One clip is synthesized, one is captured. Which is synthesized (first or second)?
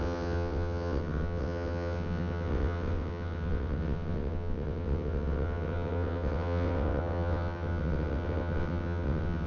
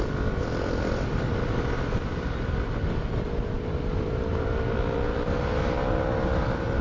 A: first